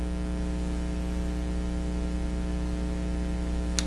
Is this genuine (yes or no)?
yes